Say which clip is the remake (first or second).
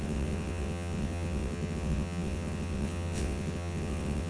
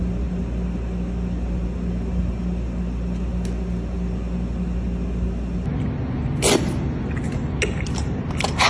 first